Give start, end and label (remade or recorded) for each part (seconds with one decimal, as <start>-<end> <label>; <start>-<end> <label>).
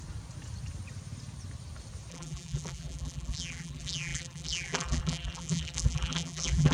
0.0-2.1 recorded; 2.1-6.7 remade